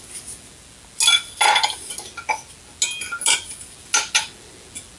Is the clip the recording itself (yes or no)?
yes